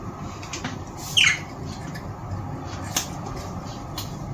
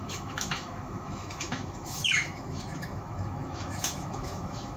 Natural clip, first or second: first